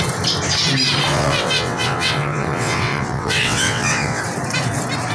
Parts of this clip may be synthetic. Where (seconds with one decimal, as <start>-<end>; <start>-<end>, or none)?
1.1-4.2